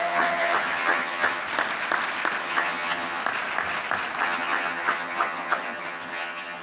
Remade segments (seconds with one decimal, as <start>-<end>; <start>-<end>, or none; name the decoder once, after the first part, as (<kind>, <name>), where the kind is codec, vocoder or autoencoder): 0.0-1.4 (vocoder, HiFi-GAN); 2.4-3.2; 4.2-6.6